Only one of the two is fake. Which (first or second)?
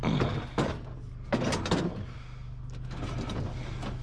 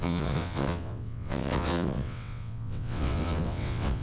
second